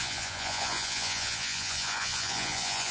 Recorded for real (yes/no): no